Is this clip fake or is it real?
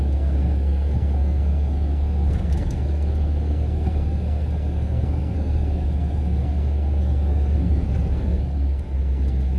fake